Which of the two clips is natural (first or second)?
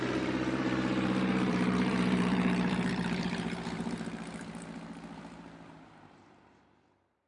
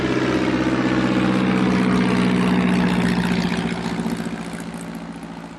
second